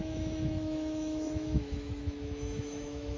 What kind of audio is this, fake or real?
fake